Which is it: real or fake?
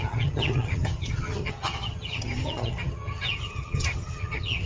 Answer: fake